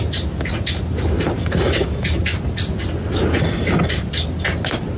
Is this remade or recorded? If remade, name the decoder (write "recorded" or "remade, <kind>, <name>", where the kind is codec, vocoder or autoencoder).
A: recorded